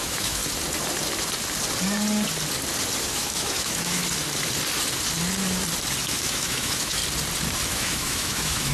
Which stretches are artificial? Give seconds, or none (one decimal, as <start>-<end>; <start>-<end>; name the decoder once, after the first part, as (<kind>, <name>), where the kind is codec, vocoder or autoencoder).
0.0-0.4 (autoencoder, DAC-VAE); 3.0-4.0; 6.0-7.0; 7.7-8.7